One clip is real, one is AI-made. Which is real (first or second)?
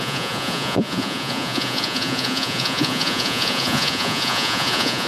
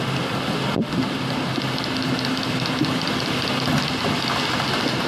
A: second